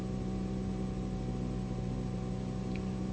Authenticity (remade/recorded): recorded